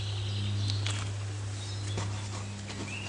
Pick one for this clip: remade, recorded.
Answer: recorded